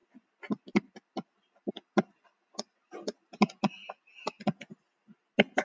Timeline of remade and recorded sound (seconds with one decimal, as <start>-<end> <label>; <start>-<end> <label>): 0.0-5.6 recorded

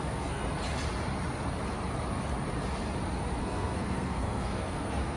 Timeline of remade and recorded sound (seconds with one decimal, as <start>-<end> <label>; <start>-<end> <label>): 0.0-0.4 remade; 0.4-3.4 recorded; 3.4-5.2 remade

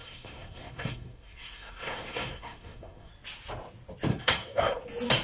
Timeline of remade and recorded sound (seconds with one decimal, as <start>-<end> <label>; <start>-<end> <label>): 0.0-3.1 remade; 3.1-4.1 recorded; 4.1-4.8 remade; 4.8-5.2 recorded

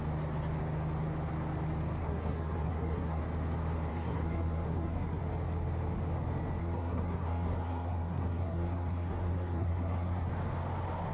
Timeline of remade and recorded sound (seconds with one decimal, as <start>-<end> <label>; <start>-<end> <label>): 0.0-2.0 recorded; 2.0-3.2 remade; 3.2-3.9 recorded; 3.9-5.2 remade; 5.2-6.6 recorded; 6.6-10.3 remade; 10.3-11.1 recorded

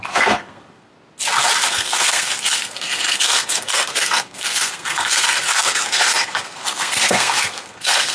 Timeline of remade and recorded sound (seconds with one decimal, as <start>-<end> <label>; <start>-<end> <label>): 0.0-0.9 remade; 0.9-1.7 recorded; 1.7-8.1 remade